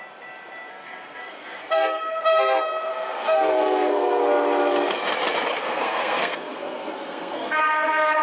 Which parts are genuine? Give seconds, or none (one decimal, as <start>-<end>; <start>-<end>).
0.0-0.7; 2.2-2.9; 4.2-5.6